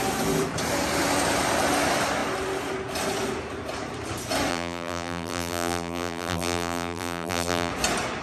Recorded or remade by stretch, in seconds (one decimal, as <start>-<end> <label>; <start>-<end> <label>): 0.0-4.5 recorded; 4.5-7.7 remade; 7.7-8.2 recorded